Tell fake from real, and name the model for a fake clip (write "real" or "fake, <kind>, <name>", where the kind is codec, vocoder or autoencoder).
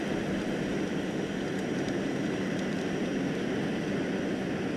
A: fake, vocoder, BigVGAN v2